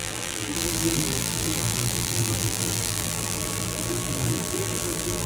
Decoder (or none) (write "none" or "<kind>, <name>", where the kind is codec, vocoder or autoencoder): vocoder, BigVGAN v2